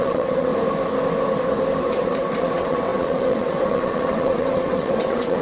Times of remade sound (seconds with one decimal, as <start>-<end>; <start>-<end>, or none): 0.0-0.5; 1.8-5.4